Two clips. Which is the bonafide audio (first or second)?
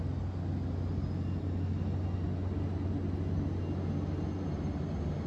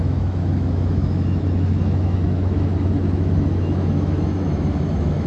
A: first